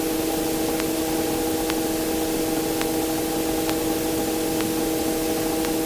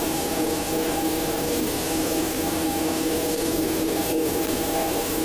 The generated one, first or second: second